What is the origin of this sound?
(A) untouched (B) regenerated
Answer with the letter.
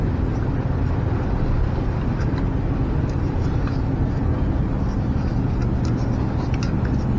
A